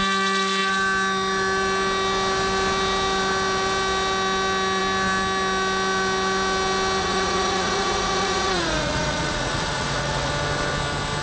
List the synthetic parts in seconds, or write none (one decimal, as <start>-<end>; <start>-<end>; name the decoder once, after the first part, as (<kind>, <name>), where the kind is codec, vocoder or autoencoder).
7.0-10.3 (vocoder, Vocos)